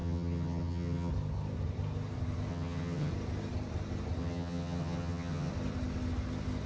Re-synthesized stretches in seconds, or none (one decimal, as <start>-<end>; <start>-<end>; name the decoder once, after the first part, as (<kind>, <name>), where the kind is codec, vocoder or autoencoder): 0.0-1.1 (vocoder, HiFi-GAN); 2.5-3.1; 4.2-5.5